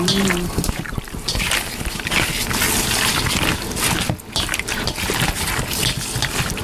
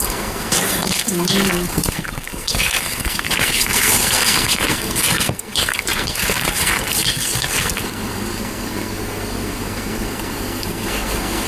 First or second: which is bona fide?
first